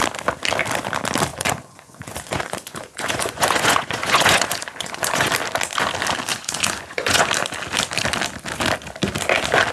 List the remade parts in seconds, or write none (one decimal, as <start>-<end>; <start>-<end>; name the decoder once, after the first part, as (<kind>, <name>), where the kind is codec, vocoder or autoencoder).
1.3-5.3 (vocoder, Vocos); 6.3-7.3